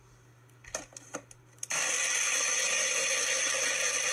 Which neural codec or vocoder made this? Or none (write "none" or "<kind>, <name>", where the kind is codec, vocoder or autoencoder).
none